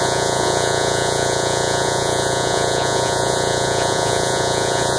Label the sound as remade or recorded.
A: remade